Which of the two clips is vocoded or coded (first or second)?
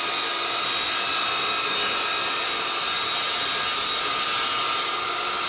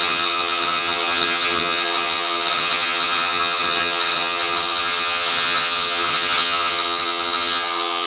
second